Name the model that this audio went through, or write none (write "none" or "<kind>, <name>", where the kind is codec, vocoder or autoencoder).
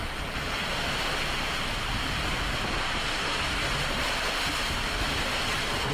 none